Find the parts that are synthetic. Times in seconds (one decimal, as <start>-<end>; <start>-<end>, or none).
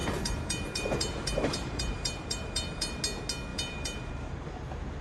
0.0-3.0; 3.5-4.4